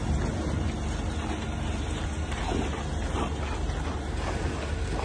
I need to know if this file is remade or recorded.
recorded